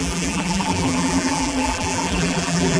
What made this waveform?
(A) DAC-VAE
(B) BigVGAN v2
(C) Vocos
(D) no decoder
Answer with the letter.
B